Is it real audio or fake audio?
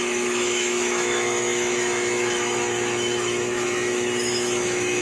fake